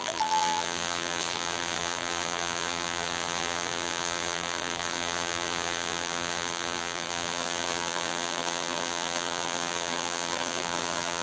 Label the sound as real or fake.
fake